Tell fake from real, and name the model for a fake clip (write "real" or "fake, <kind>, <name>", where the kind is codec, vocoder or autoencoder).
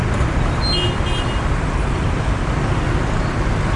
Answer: real